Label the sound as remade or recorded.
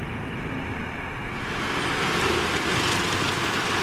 recorded